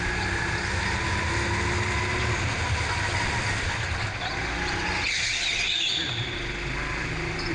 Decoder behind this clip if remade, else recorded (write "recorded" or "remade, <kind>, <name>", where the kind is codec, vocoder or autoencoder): recorded